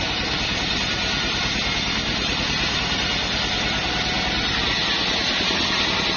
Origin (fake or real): real